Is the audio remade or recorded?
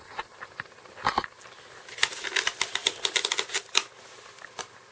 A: recorded